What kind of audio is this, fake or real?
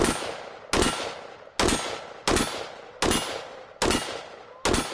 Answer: real